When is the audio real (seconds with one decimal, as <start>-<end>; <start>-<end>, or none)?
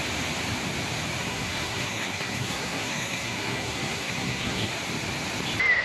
0.0-1.2; 4.7-5.8